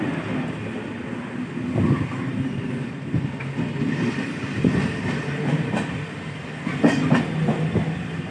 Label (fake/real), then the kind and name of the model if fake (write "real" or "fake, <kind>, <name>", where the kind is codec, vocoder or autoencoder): real